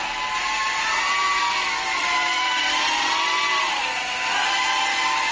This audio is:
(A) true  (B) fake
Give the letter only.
A